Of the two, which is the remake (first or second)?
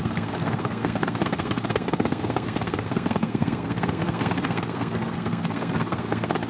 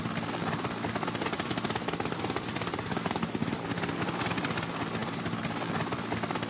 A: first